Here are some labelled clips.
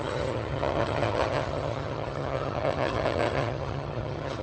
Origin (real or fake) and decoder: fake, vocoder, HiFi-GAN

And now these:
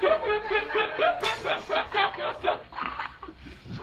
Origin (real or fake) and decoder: fake, codec, SNAC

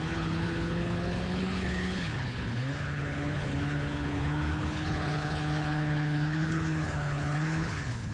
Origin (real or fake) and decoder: fake, codec, HILCodec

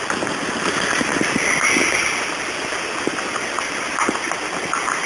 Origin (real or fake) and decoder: real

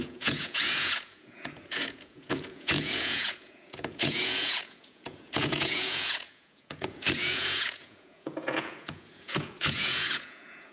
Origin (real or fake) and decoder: fake, vocoder, Vocos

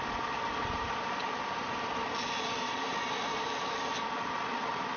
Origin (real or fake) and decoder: real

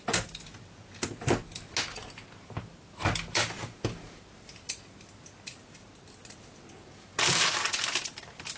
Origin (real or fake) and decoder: real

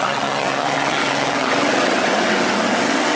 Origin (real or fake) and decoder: fake, vocoder, WaveNeXt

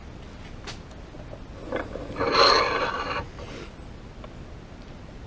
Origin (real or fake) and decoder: real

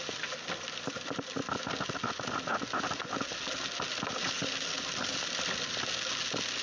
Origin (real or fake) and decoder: real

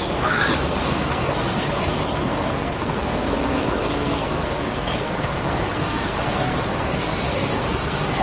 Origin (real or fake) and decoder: fake, codec, SNAC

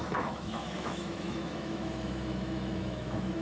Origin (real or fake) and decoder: fake, autoencoder, DAC-VAE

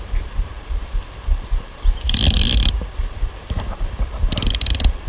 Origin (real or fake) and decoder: real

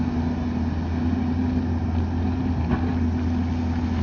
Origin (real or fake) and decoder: real